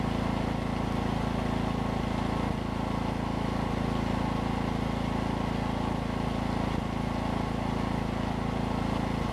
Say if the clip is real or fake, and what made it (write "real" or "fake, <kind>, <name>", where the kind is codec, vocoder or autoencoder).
real